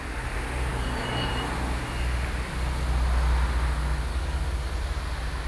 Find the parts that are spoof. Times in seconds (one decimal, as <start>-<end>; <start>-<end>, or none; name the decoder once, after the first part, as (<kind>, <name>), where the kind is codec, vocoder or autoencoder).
0.7-1.3 (codec, DAC); 4.1-4.7